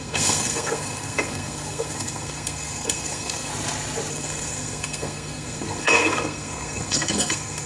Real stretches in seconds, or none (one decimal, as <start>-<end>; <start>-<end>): 3.5-4.1